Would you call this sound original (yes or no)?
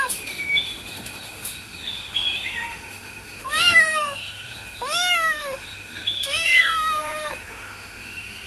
no